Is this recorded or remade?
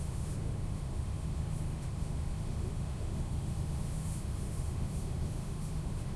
remade